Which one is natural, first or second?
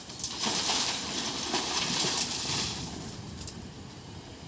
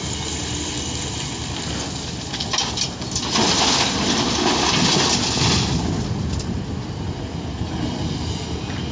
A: second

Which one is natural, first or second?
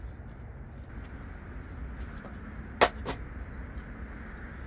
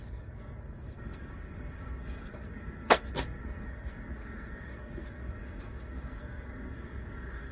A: first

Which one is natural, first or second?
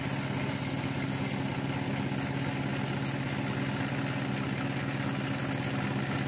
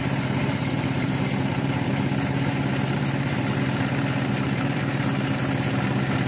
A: first